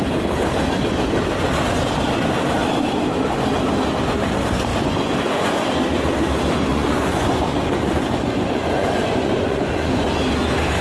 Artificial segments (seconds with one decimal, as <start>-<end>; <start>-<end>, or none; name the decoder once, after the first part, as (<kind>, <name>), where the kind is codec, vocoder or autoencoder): 4.7-5.7 (vocoder, Vocos); 6.7-10.1